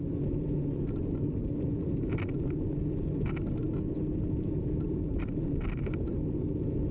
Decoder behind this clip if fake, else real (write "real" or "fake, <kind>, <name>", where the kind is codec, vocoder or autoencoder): real